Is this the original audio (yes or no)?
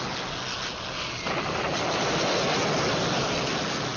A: yes